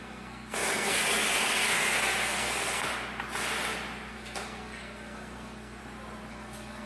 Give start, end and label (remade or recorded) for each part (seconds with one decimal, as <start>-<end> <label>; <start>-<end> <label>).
0.0-2.9 remade; 2.9-4.1 recorded; 4.1-5.8 remade; 5.8-6.3 recorded; 6.3-6.9 remade